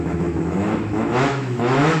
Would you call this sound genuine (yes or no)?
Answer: no